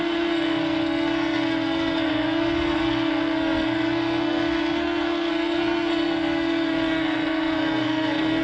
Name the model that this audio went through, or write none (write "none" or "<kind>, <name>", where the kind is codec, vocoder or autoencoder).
codec, SNAC